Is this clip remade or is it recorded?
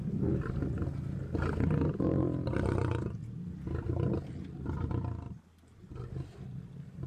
recorded